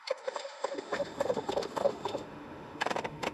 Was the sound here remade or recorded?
remade